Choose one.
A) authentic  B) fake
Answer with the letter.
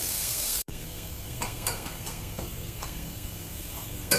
B